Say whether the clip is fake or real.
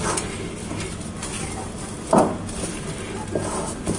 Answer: real